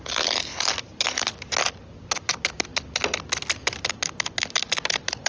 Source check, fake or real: real